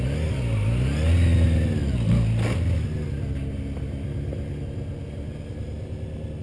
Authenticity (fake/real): real